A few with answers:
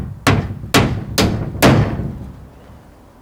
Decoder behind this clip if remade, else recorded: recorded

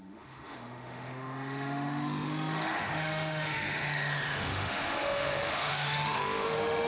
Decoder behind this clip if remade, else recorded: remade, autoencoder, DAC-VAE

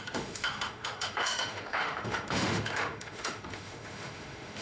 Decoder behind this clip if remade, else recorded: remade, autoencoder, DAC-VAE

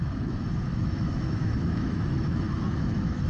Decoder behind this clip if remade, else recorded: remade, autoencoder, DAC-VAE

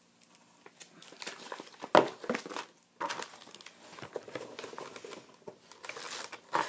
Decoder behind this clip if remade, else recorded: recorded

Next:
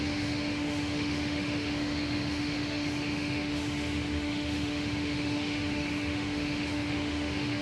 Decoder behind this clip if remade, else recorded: remade, autoencoder, DAC-VAE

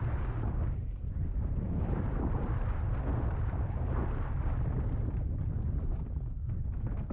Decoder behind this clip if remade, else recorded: recorded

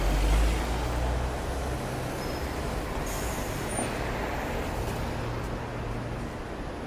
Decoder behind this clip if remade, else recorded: recorded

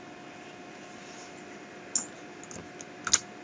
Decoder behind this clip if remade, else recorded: recorded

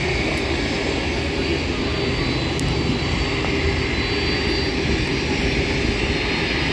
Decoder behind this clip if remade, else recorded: recorded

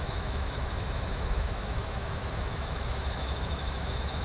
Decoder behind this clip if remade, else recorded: remade, autoencoder, DAC-VAE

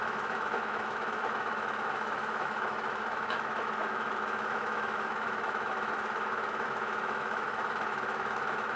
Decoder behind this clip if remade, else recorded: remade, autoencoder, DAC-VAE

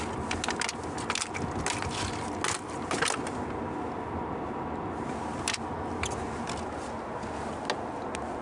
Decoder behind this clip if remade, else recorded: recorded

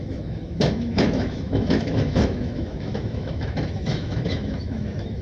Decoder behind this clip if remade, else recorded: remade, autoencoder, DAC-VAE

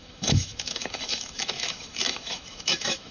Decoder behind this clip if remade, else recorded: remade, autoencoder, DAC-VAE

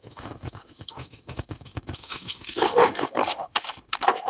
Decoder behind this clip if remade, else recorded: remade, autoencoder, DAC-VAE